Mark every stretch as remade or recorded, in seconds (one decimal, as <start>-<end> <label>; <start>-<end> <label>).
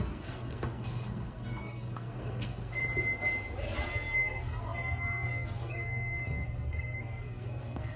0.0-2.8 remade; 2.8-3.8 recorded; 3.8-8.0 remade